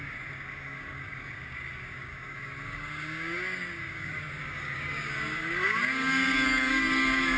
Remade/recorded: remade